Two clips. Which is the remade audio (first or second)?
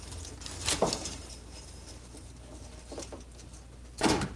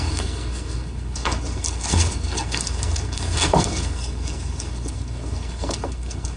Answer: second